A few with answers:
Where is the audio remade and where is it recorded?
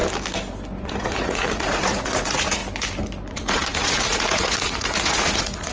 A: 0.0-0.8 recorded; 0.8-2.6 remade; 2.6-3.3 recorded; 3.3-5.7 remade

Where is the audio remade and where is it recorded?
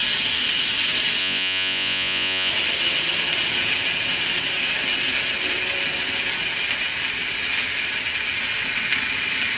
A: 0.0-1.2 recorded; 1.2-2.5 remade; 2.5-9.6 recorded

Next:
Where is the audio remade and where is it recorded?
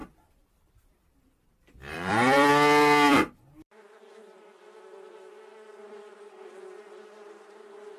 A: 0.0-4.8 remade; 4.8-8.0 recorded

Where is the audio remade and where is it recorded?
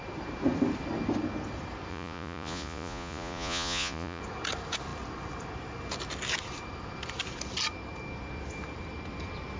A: 0.0-1.9 recorded; 1.9-4.2 remade; 4.2-9.6 recorded